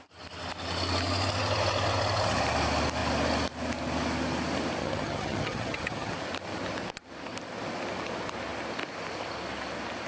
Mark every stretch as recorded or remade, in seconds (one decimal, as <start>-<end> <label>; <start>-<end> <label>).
0.0-4.8 recorded; 4.8-6.1 remade; 6.1-10.1 recorded